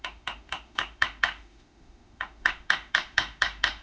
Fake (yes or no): yes